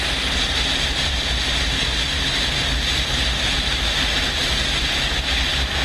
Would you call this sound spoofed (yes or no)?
yes